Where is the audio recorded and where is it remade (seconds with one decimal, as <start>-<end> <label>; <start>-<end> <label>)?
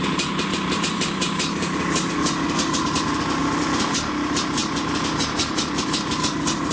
0.0-0.5 recorded; 0.5-2.1 remade; 2.1-3.4 recorded; 3.4-4.1 remade; 4.1-4.6 recorded; 4.6-6.3 remade; 6.3-6.7 recorded